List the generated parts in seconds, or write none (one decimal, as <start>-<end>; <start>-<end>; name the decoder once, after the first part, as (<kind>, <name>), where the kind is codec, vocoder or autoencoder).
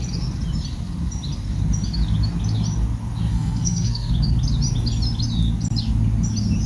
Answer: 3.3-4.1 (codec, SNAC)